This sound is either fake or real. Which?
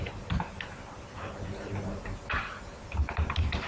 real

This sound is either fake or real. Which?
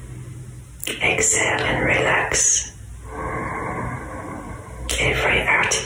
real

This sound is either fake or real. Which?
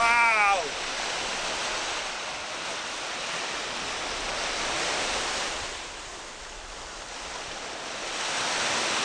real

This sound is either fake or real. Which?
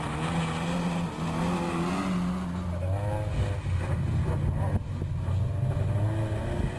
real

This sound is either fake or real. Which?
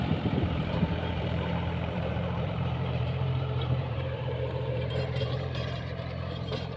fake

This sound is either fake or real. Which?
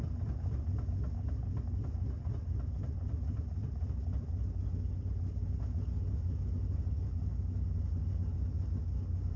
real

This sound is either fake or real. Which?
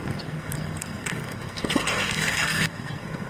fake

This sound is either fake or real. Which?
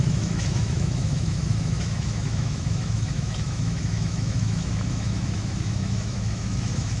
fake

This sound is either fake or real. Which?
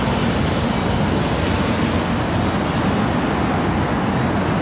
real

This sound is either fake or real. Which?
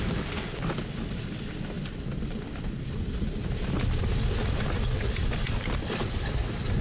real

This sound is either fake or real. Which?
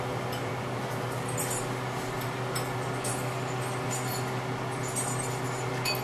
real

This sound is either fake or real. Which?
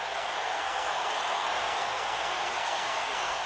fake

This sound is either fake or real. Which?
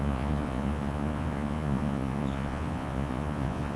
fake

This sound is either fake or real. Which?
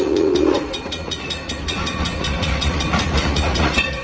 fake